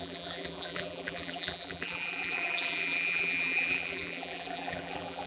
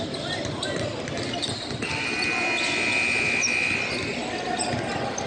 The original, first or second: second